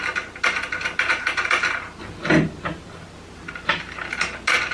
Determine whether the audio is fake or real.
real